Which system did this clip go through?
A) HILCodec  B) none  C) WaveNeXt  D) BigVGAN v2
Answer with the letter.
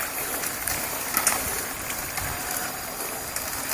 B